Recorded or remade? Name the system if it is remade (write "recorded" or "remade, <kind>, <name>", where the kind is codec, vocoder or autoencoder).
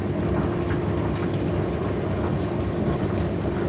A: recorded